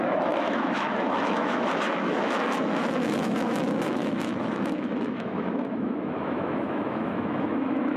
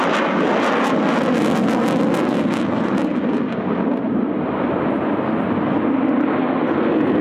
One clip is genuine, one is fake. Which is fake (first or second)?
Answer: first